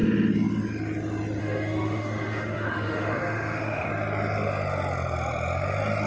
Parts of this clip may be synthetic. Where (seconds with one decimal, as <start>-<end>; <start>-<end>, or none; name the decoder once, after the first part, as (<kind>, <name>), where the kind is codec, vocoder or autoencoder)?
1.4-3.9 (autoencoder, DAC-VAE)